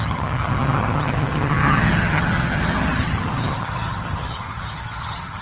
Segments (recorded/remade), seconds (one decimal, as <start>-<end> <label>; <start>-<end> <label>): 0.0-5.4 remade